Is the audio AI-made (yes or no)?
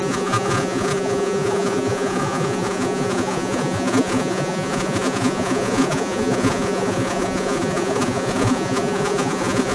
yes